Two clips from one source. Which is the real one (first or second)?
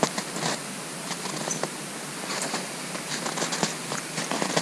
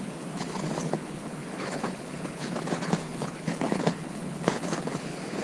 first